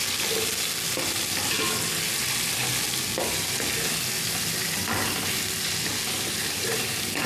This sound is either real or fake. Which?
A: real